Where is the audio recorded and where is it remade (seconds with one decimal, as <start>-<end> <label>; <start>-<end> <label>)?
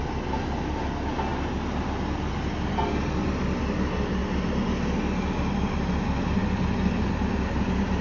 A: 0.0-8.0 recorded